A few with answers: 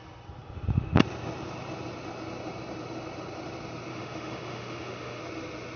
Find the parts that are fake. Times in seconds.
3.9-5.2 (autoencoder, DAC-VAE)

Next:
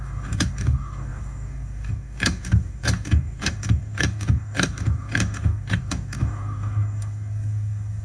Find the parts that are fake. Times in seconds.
0.0-8.0 (codec, DAC)

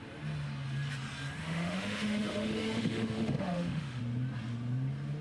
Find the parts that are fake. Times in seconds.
1.4-4.0 (autoencoder, DAC-VAE)

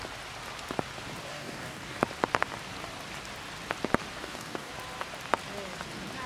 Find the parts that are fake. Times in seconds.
1.3-2.0 (codec, DAC); 4.2-4.7

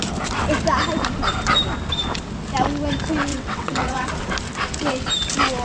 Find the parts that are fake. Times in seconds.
3.3-4.1 (vocoder, WaveNeXt)

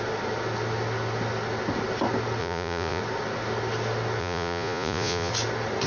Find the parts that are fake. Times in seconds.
2.4-3.0 (vocoder, Vocos); 4.2-5.3